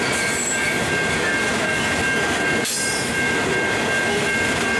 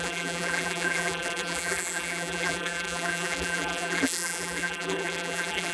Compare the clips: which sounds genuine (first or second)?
first